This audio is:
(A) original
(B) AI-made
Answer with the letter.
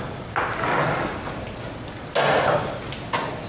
A